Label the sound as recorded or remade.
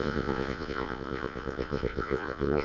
remade